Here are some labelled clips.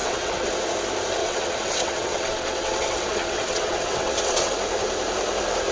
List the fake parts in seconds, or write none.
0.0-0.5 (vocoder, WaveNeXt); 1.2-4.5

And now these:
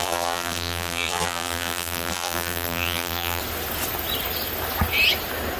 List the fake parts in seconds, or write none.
0.0-3.4 (vocoder, BigVGAN v2)

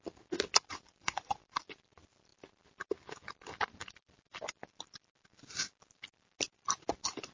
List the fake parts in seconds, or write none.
1.0-1.6 (vocoder, BigVGAN v2)

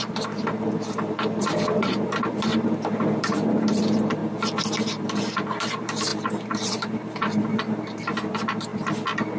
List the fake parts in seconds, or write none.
0.0-2.5 (vocoder, BigVGAN v2); 3.2-4.2; 5.0-8.7

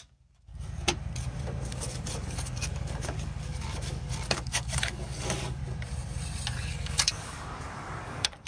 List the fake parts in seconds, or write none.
0.0-0.5 (codec, DAC); 1.7-5.6; 6.7-8.5

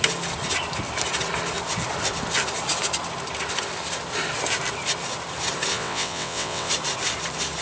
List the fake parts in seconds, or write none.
5.7-6.7 (vocoder, WaveNeXt)